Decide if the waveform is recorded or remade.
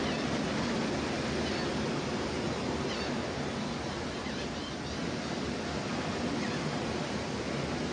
recorded